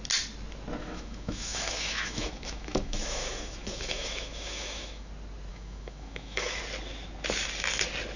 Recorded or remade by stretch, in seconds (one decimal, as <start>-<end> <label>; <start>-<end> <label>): 0.0-0.8 recorded; 0.8-5.1 remade; 5.1-5.5 recorded; 5.5-6.6 remade; 6.6-8.2 recorded